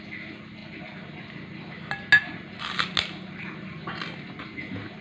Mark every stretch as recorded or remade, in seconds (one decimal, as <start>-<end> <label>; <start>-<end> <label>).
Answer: 0.0-5.0 recorded